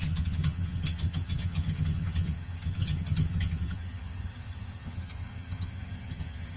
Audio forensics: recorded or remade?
remade